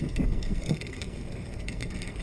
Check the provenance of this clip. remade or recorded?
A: remade